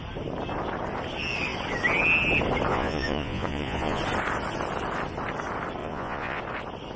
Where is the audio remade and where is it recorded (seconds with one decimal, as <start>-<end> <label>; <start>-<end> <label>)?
0.0-2.7 recorded; 2.7-4.0 remade; 4.0-5.8 recorded; 5.8-6.4 remade; 6.4-7.0 recorded